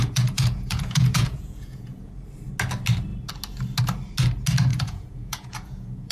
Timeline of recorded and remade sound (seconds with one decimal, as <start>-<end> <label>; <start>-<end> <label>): 0.0-2.1 remade; 2.1-4.7 recorded; 4.7-6.1 remade